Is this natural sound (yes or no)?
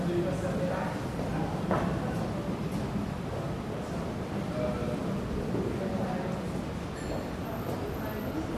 yes